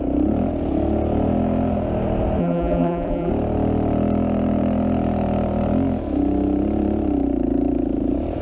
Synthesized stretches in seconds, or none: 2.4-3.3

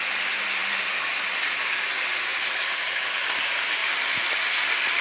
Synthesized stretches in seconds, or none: 2.3-2.9

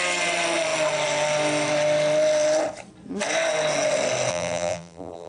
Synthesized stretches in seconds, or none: 4.3-5.3

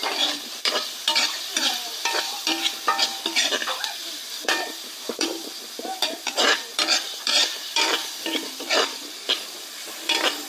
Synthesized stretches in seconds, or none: 0.0-3.6; 4.2-10.5

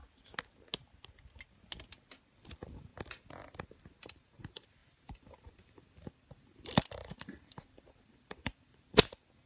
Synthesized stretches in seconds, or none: 2.2-9.5

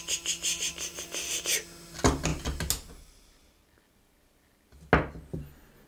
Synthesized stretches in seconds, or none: none

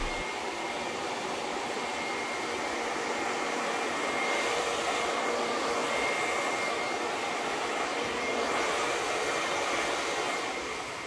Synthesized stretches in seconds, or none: 0.0-5.8; 6.5-11.1

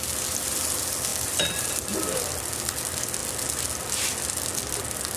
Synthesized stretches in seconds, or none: 1.1-2.5